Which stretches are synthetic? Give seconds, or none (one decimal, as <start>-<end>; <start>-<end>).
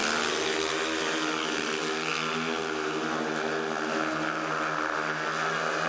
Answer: none